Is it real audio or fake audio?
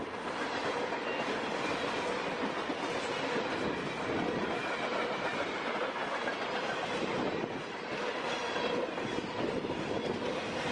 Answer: real